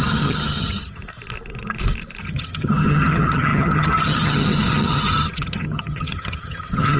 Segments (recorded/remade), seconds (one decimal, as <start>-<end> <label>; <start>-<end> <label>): 0.0-1.0 remade; 1.0-2.2 recorded; 2.2-7.0 remade